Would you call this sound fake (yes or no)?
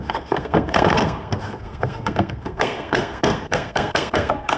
yes